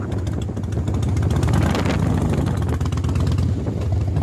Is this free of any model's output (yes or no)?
yes